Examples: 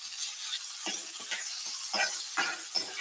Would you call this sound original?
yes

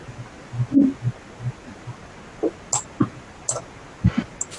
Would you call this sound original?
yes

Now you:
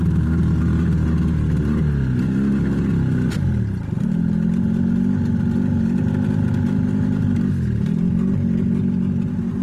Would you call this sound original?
yes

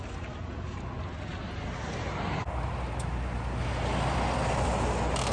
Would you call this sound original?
yes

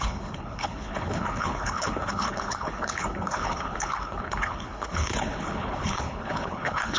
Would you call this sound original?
no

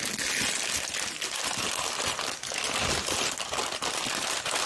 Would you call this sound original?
yes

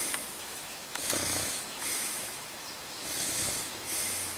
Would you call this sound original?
no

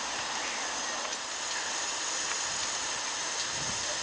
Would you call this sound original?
yes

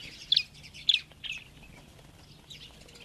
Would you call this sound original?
yes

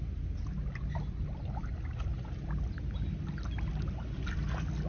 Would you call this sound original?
yes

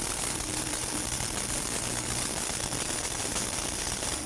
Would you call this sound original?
no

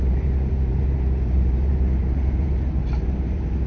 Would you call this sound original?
no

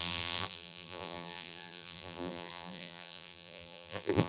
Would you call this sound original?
no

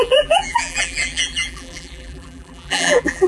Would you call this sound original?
no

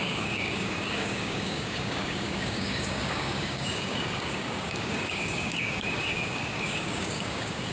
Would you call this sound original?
no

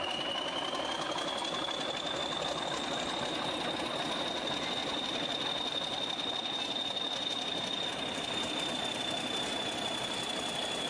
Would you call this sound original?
yes